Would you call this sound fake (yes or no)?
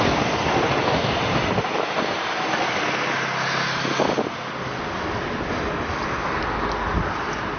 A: no